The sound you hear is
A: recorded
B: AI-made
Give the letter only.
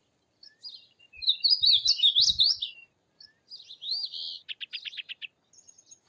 A